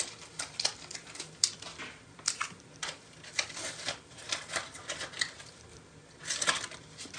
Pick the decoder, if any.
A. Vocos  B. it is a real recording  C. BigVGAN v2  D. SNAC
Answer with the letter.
C